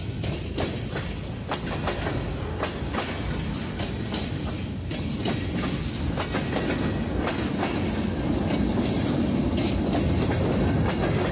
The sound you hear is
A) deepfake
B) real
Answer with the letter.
B